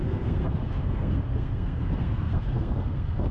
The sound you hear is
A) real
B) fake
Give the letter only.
B